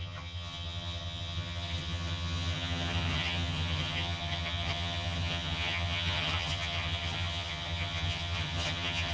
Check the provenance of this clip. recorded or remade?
remade